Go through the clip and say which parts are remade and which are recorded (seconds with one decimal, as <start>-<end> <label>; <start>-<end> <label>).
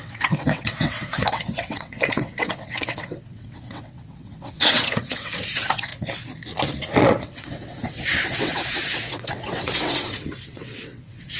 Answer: 0.0-5.9 remade; 5.9-7.0 recorded; 7.0-11.4 remade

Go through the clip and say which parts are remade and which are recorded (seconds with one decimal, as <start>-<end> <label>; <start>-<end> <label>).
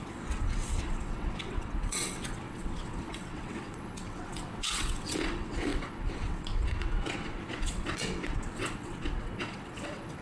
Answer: 0.0-10.2 remade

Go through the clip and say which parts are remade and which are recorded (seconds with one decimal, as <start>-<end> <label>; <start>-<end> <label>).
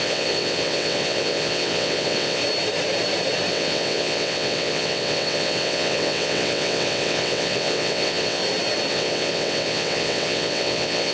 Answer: 0.0-2.4 remade; 2.4-3.5 recorded; 3.5-8.4 remade; 8.4-8.9 recorded; 8.9-11.1 remade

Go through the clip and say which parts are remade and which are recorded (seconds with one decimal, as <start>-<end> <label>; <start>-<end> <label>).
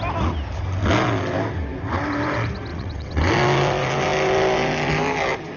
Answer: 0.0-2.7 recorded; 2.7-3.3 remade; 3.3-5.6 recorded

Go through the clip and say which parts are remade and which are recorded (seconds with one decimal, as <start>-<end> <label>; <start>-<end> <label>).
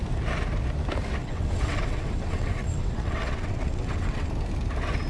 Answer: 0.0-1.2 recorded; 1.2-4.3 remade; 4.3-5.1 recorded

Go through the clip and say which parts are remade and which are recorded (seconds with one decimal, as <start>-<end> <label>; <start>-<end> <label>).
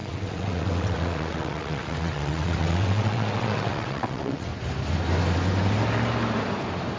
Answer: 0.0-4.5 remade; 4.5-7.0 recorded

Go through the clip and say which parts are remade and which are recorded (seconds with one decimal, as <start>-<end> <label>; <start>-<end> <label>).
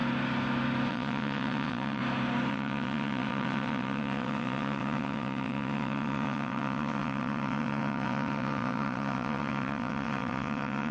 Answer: 0.0-0.9 recorded; 0.9-2.0 remade; 2.0-2.5 recorded; 2.5-10.9 remade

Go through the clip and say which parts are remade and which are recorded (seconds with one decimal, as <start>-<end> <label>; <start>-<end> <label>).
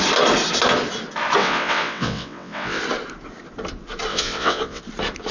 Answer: 0.0-1.4 recorded; 1.4-2.8 remade; 2.8-4.1 recorded; 4.1-4.8 remade; 4.8-5.3 recorded